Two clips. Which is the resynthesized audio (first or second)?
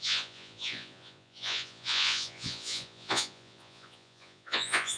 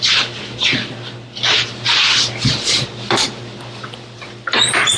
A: first